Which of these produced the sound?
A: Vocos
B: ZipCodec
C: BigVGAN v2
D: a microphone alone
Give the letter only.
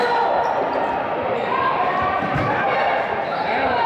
C